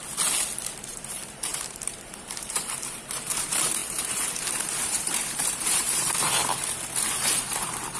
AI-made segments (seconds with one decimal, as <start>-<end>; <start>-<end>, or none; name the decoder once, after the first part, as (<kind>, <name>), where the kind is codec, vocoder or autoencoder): 0.8-8.0 (vocoder, BigVGAN v2)